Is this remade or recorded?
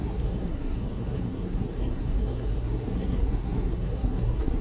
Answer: remade